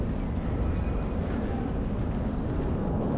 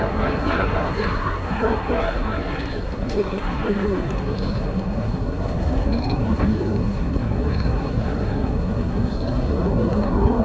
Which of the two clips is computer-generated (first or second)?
second